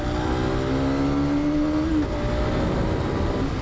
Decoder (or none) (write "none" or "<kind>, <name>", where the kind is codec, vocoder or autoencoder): none